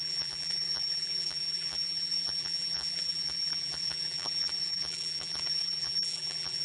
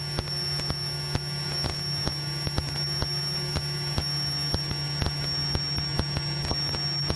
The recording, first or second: second